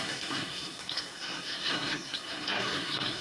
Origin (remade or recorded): remade